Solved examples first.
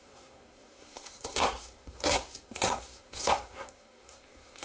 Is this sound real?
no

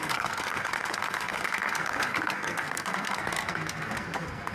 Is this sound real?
no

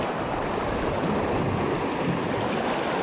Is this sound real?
yes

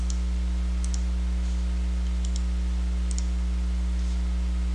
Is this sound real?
yes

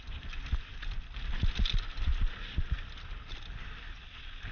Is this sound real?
yes